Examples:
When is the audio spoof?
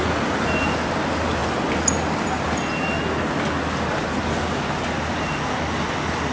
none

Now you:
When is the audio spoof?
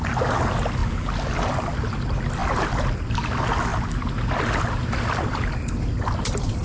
none